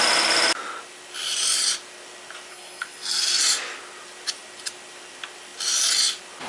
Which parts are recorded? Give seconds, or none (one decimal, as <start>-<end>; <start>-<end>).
0.0-2.5; 3.4-6.5